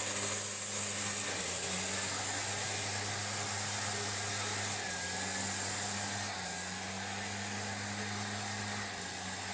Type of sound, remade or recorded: recorded